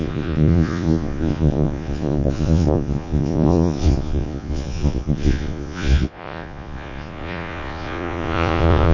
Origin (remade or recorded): remade